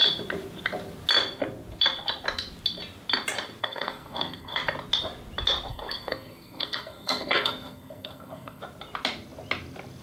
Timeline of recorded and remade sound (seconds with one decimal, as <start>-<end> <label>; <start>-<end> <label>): 0.0-3.6 recorded; 3.6-4.6 remade; 4.6-5.7 recorded; 5.7-8.6 remade; 8.6-10.0 recorded